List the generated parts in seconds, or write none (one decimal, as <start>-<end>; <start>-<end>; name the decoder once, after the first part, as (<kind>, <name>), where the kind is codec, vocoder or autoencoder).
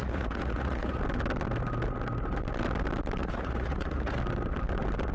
0.0-1.0 (vocoder, Vocos); 3.2-4.2